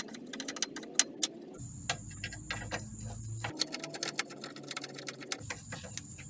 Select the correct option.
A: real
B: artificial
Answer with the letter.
A